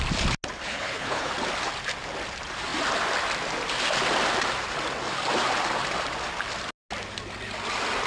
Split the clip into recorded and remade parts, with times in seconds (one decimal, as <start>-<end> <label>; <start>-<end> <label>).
0.0-0.6 recorded; 0.6-1.3 remade; 1.3-8.1 recorded